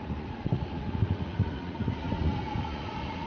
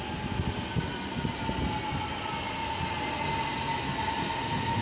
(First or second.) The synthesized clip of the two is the first